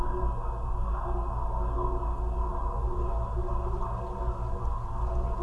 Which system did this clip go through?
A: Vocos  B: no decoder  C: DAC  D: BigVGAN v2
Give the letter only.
B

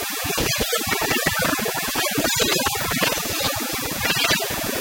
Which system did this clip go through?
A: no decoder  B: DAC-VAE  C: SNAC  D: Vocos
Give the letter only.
D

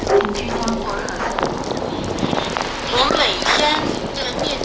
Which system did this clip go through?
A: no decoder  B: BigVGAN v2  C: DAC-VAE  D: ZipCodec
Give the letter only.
A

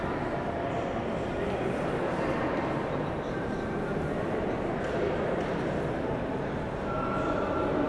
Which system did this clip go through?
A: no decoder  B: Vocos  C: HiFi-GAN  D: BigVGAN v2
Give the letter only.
A